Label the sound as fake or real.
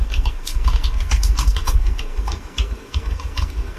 fake